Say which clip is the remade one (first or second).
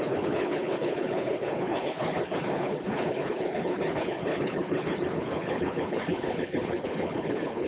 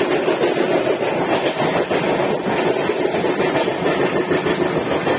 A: first